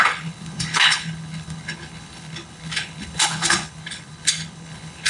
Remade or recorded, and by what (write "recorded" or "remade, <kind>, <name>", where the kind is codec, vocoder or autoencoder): remade, codec, HILCodec